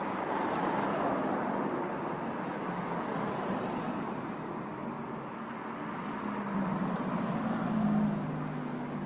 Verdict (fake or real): real